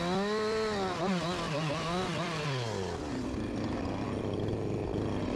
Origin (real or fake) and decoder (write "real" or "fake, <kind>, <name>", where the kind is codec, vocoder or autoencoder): real